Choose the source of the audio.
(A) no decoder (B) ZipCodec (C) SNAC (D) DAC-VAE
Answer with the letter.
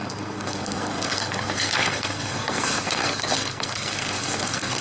C